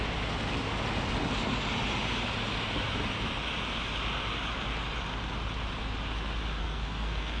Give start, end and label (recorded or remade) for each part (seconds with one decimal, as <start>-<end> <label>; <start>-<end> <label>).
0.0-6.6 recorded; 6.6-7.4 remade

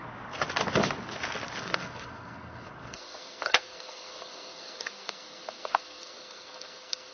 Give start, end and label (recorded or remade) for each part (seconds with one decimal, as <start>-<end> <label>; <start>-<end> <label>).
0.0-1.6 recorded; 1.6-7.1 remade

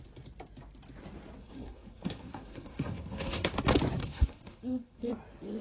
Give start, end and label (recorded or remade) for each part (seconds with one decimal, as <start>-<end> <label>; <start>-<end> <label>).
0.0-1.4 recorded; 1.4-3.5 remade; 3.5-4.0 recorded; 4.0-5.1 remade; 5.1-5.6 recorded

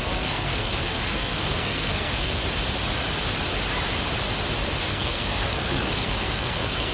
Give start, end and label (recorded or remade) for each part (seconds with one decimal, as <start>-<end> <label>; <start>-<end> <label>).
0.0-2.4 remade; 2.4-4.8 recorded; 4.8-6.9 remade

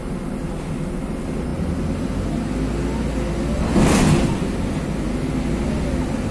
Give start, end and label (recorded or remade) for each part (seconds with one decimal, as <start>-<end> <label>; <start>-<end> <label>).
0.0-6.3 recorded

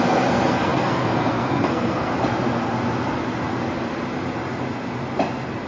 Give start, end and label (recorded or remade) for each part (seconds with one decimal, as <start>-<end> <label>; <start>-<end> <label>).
0.0-2.1 remade; 2.1-5.7 recorded